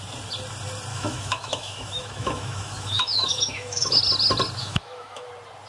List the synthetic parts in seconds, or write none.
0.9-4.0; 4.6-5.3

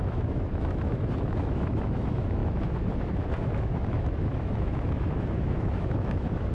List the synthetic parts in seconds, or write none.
0.0-6.5